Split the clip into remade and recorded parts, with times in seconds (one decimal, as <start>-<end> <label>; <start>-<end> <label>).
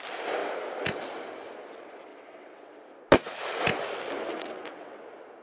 0.0-2.1 recorded; 2.1-2.8 remade; 2.8-4.2 recorded; 4.2-5.0 remade; 5.0-5.4 recorded